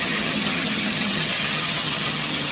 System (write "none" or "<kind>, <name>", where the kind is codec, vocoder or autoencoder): vocoder, HiFi-GAN